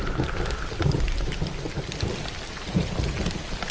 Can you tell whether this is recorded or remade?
recorded